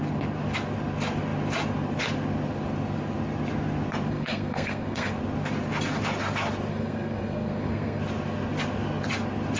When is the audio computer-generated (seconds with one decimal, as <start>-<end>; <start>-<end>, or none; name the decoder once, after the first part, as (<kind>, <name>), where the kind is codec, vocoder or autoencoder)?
4.1-5.1 (codec, SNAC); 6.7-8.0